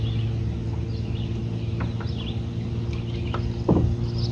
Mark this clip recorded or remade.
recorded